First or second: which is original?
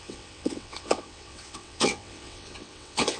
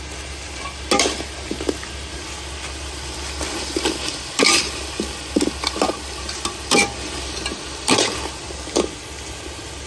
second